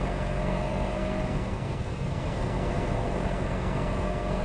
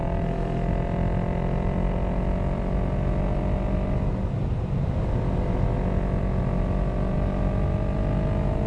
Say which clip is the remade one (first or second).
first